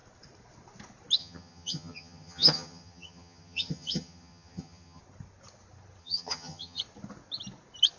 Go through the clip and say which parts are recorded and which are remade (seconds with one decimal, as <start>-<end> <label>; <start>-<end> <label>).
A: 0.0-1.2 recorded; 1.2-5.0 remade; 5.0-6.0 recorded; 6.0-6.8 remade; 6.8-8.0 recorded